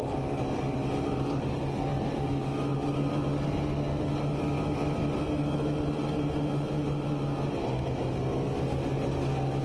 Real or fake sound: real